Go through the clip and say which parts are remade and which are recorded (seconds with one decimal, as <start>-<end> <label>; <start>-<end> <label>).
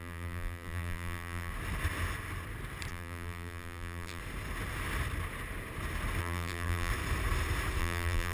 0.0-1.5 remade; 1.5-2.9 recorded; 2.9-4.2 remade; 4.2-6.2 recorded; 6.2-6.9 remade; 6.9-7.8 recorded; 7.8-8.3 remade